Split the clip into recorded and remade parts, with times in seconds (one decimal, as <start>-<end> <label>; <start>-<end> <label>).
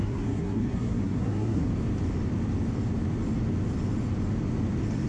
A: 0.0-1.7 remade; 1.7-5.1 recorded